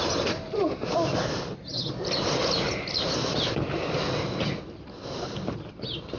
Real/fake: real